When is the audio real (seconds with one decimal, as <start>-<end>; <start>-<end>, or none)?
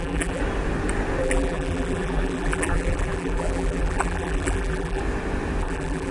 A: 0.4-1.2; 5.0-5.6